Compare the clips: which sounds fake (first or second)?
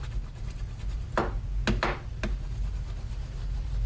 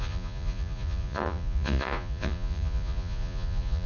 second